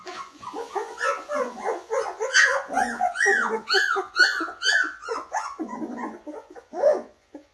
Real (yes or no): no